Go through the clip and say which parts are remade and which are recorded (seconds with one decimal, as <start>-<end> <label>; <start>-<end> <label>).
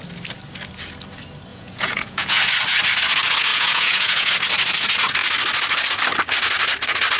0.0-1.5 recorded; 1.5-2.4 remade; 2.4-3.5 recorded; 3.5-4.3 remade; 4.3-7.2 recorded